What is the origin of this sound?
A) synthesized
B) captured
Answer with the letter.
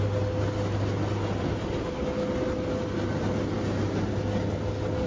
B